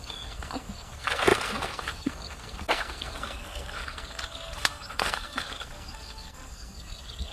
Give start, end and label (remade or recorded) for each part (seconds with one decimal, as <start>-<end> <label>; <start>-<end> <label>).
0.0-7.3 remade